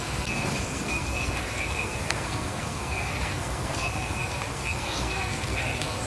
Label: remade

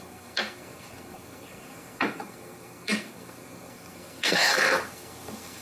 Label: remade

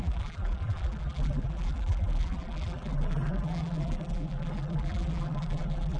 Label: remade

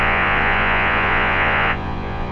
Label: remade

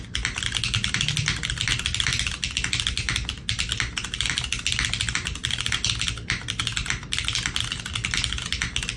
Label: recorded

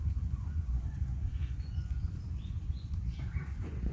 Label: remade